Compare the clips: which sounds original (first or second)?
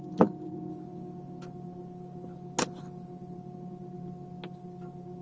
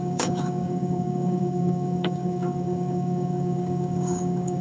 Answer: first